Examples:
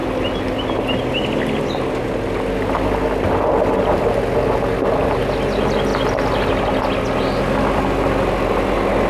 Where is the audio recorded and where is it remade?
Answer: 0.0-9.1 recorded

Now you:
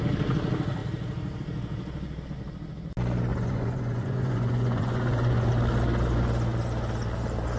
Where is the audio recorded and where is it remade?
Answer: 0.0-3.3 recorded; 3.3-5.5 remade; 5.5-7.6 recorded

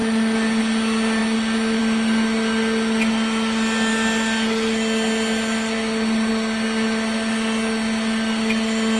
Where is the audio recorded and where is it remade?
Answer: 0.0-9.0 recorded

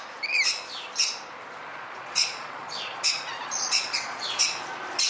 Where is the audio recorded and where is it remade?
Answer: 0.0-1.7 recorded; 1.7-4.6 remade; 4.6-5.1 recorded

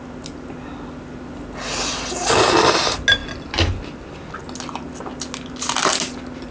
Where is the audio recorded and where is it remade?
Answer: 0.0-6.5 recorded

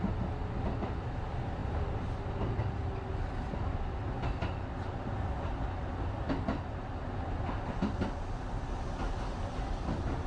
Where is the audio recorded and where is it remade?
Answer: 0.0-10.3 recorded

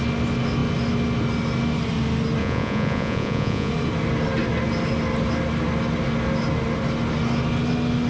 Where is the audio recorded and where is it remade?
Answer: 0.0-2.4 recorded; 2.4-3.7 remade; 3.7-8.1 recorded